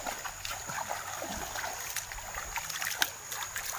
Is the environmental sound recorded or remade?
recorded